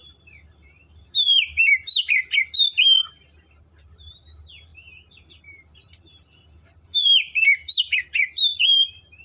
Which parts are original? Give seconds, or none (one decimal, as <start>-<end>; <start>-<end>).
none